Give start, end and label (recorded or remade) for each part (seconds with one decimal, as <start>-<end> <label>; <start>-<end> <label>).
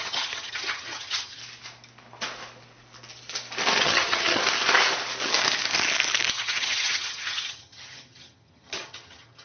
0.0-1.4 remade; 1.4-3.8 recorded; 3.8-4.4 remade; 4.4-6.3 recorded; 6.3-9.4 remade